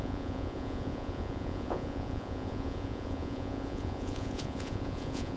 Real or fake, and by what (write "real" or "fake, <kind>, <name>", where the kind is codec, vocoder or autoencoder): fake, vocoder, Vocos